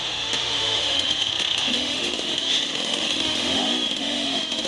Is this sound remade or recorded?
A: remade